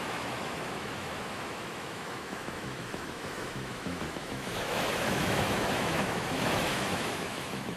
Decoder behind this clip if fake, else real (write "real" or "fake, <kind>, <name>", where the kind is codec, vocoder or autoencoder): fake, autoencoder, DAC-VAE